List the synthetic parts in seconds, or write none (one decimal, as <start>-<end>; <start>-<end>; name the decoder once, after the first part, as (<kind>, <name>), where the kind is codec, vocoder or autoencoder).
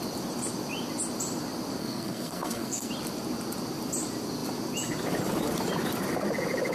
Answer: 1.8-2.9 (codec, SNAC)